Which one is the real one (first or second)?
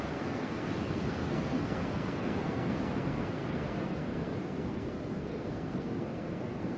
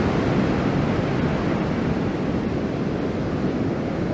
second